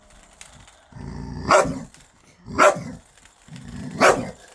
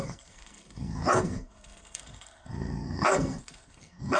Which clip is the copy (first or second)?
second